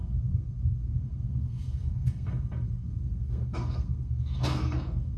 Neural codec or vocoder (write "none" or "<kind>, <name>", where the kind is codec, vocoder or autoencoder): codec, SNAC